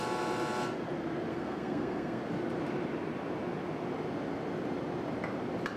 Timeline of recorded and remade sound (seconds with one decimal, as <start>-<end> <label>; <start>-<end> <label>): 0.0-1.3 recorded; 1.3-2.2 remade; 2.2-5.8 recorded